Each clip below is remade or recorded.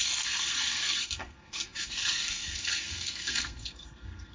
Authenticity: remade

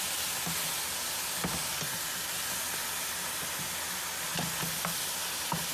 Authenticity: recorded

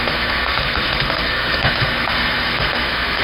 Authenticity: remade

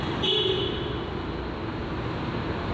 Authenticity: recorded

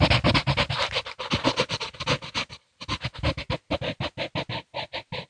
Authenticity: recorded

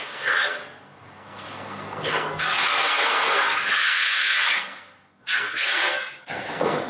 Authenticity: remade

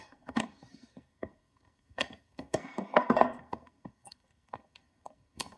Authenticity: remade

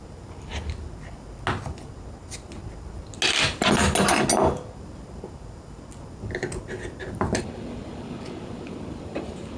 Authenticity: recorded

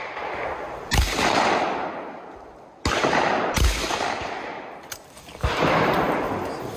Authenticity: recorded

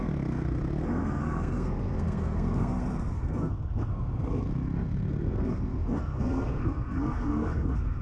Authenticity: remade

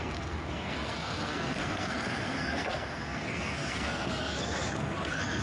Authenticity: remade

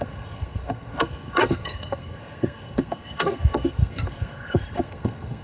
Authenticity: remade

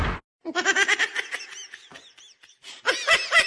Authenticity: recorded